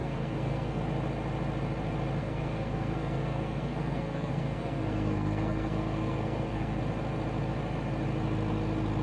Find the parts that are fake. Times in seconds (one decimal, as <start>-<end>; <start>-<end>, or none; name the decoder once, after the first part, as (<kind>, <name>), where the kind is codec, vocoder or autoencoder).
0.0-0.8 (codec, SNAC); 2.2-6.8